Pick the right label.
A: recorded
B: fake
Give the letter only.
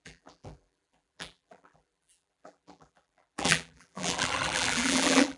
B